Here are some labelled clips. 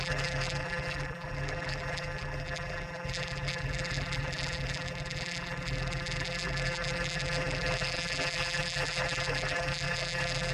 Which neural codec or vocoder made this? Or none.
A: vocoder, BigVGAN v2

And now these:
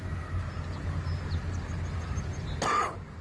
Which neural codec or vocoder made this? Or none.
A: none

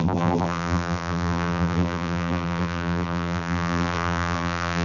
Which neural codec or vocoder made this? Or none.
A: vocoder, BigVGAN v2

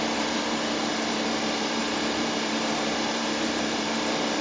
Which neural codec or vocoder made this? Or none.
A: vocoder, BigVGAN v2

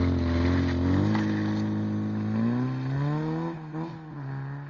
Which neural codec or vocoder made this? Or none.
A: none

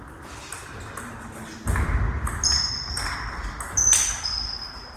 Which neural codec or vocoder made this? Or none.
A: none